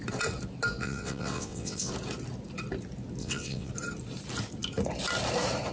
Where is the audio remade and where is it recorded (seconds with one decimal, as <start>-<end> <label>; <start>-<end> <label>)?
0.0-0.8 recorded; 0.8-1.9 remade; 1.9-3.2 recorded; 3.2-3.7 remade; 3.7-5.7 recorded